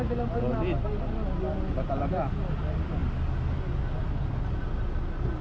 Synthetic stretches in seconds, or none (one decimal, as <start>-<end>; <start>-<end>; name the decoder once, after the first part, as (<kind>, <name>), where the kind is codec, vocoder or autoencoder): none